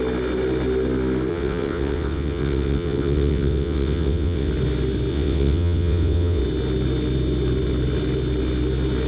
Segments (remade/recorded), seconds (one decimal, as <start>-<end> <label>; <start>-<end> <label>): 0.0-1.3 recorded; 1.3-4.5 remade; 4.5-5.1 recorded; 5.1-6.4 remade; 6.4-9.1 recorded

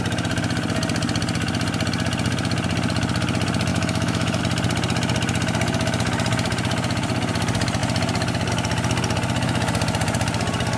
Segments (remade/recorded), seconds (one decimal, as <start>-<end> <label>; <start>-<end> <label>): 0.0-3.7 recorded; 3.7-4.4 remade; 4.4-10.8 recorded

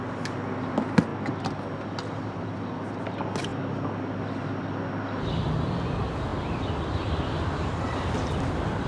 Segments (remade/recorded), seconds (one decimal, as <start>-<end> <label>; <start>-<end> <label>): 0.0-8.9 recorded

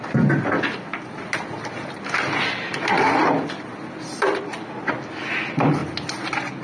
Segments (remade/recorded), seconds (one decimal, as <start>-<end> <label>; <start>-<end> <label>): 0.0-6.6 recorded